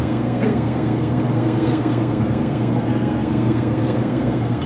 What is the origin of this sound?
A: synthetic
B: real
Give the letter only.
A